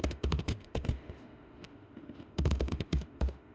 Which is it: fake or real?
fake